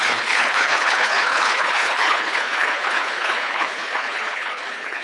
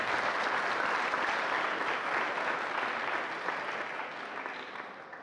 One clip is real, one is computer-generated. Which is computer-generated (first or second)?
first